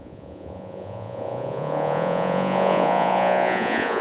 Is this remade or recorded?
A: remade